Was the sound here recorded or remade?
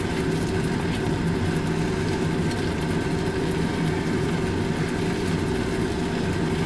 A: recorded